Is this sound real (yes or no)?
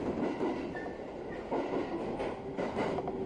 yes